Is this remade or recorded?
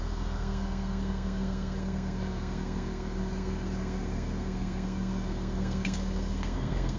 remade